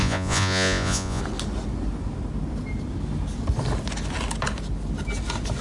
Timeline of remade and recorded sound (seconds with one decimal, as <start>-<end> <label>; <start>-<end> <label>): 0.0-1.2 remade; 1.2-5.6 recorded